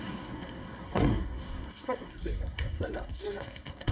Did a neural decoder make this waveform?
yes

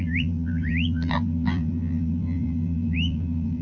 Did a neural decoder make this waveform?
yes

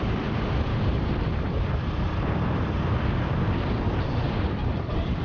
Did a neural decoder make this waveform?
yes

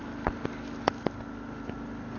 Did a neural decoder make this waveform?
no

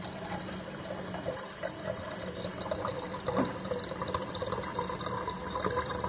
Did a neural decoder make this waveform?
no